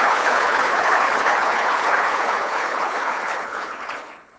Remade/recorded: remade